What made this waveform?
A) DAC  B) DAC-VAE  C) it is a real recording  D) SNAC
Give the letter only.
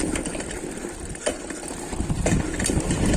C